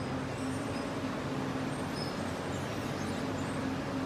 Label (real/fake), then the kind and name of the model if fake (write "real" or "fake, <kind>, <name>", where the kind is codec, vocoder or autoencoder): real